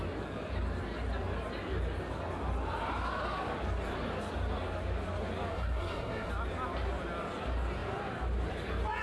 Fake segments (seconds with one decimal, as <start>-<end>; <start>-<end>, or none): 5.5-6.3